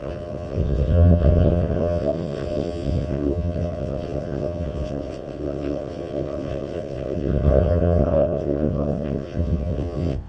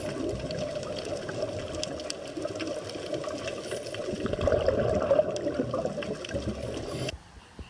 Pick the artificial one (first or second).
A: first